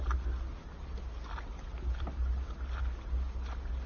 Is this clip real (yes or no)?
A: yes